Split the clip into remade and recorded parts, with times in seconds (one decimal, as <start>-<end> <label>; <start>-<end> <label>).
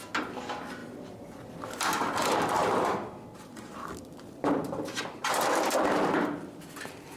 0.0-0.8 recorded; 0.8-1.5 remade; 1.5-2.6 recorded; 2.6-4.6 remade; 4.6-5.2 recorded; 5.2-5.8 remade; 5.8-7.2 recorded